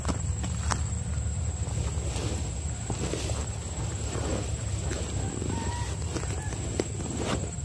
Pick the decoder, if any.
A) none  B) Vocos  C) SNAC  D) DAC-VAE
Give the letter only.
A